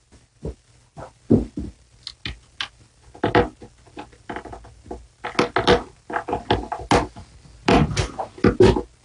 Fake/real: real